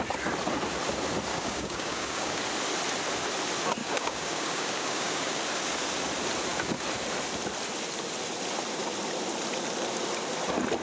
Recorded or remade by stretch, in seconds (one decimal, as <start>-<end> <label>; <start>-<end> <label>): 0.0-1.3 recorded; 1.3-2.4 remade; 2.4-3.8 recorded; 3.8-5.4 remade; 5.4-10.8 recorded